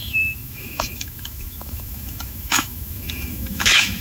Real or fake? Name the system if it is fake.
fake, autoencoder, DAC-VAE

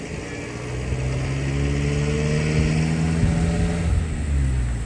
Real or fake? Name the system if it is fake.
real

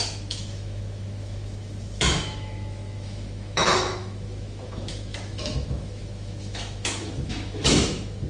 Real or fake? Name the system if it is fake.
fake, autoencoder, DAC-VAE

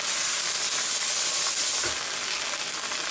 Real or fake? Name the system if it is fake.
real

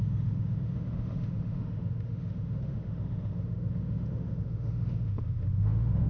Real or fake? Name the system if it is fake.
fake, autoencoder, DAC-VAE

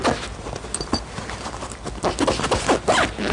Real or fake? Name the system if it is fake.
real